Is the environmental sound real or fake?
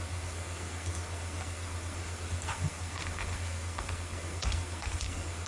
fake